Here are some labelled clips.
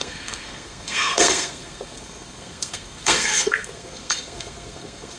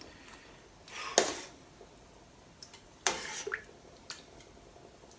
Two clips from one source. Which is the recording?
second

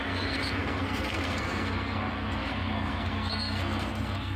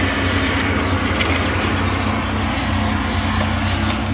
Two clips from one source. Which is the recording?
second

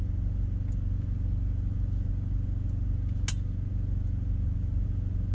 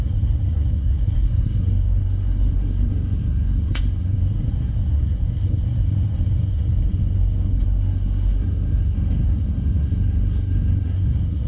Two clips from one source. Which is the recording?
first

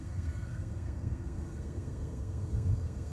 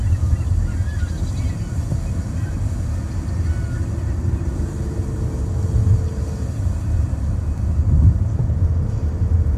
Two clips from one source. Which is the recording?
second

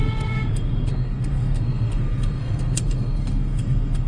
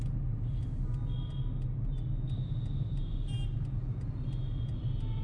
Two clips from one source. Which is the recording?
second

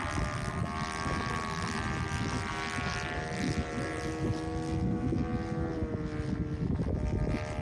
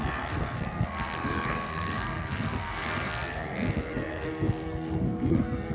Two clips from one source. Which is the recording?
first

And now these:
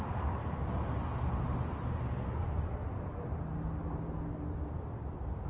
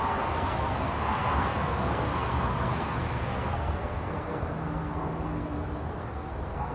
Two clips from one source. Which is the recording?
first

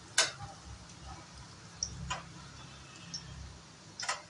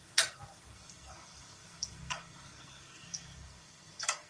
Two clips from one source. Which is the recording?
first